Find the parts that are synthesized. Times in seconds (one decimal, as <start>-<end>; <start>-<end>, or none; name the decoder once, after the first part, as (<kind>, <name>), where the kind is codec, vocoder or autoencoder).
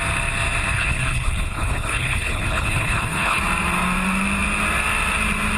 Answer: 0.7-3.4 (codec, HILCodec)